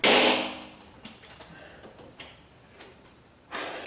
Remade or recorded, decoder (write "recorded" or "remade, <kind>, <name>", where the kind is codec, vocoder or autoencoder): recorded